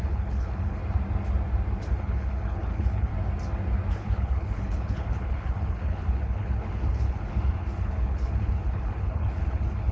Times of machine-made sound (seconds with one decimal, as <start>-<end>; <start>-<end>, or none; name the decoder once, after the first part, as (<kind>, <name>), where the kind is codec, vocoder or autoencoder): 0.0-0.8 (codec, HILCodec); 1.9-3.1; 3.9-9.9